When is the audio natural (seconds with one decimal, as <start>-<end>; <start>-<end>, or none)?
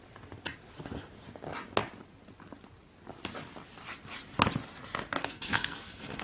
0.0-5.2